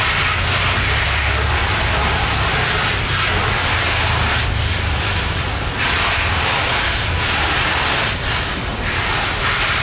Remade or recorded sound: remade